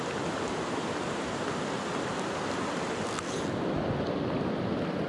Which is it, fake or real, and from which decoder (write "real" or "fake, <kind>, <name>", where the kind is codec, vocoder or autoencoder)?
real